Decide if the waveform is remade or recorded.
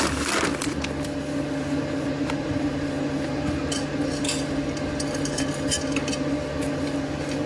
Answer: recorded